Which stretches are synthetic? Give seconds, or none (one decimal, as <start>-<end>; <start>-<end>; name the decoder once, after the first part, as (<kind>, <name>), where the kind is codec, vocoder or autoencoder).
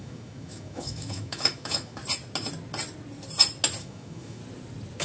0.0-2.0 (autoencoder, DAC-VAE); 3.8-4.4